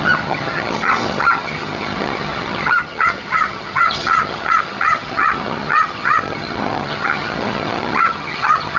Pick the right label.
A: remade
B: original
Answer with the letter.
A